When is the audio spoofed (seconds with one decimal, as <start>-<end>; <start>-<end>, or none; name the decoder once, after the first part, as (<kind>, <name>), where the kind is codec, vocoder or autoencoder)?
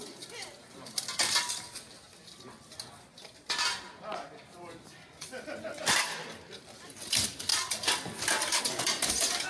none